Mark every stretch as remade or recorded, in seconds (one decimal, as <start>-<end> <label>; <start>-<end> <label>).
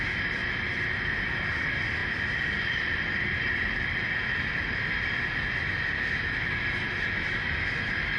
0.0-2.0 recorded; 2.0-5.6 remade; 5.6-8.2 recorded